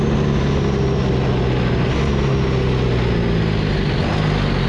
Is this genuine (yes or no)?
yes